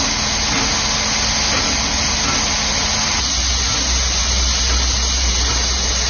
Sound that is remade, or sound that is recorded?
recorded